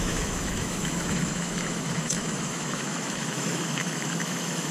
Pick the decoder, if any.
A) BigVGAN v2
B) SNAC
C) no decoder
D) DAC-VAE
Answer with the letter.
D